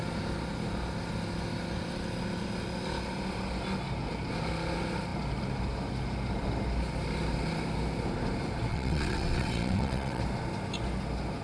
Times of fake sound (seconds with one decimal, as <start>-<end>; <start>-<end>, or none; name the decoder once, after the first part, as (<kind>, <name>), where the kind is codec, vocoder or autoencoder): 8.7-10.2 (vocoder, WaveNeXt)